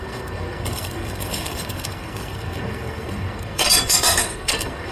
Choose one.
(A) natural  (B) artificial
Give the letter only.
B